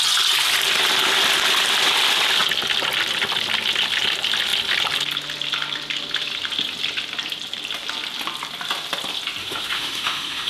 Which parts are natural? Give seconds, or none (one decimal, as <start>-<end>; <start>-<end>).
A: 0.0-9.4